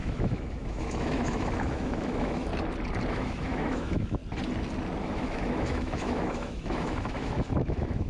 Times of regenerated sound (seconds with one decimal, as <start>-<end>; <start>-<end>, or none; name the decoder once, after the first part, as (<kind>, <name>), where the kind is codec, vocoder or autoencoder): 0.0-2.5 (autoencoder, DAC-VAE); 3.1-4.2; 5.0-8.1